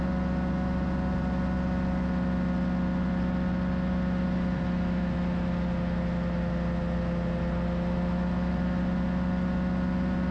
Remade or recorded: recorded